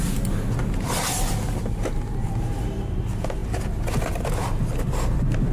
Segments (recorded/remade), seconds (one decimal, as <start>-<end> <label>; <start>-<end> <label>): 0.0-5.5 recorded